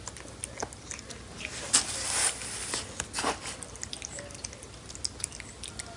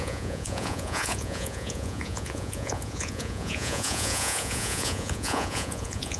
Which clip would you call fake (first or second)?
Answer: second